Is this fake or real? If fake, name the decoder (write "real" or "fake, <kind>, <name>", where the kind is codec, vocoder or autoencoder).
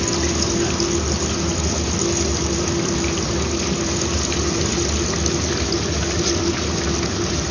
real